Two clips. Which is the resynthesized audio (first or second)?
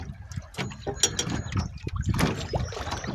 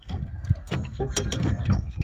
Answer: second